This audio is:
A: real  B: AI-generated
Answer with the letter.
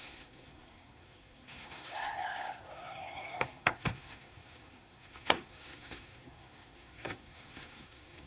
B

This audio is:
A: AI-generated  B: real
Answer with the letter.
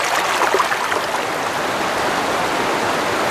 B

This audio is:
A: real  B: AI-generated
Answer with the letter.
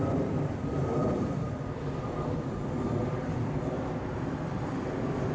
B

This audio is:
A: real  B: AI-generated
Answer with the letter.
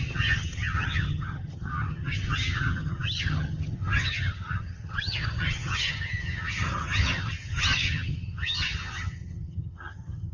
B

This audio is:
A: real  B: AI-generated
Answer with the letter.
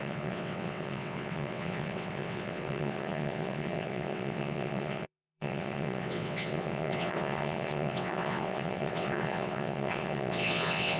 B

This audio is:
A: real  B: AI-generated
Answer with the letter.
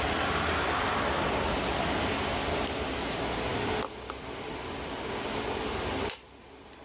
A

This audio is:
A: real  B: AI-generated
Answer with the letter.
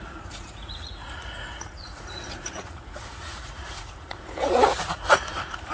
B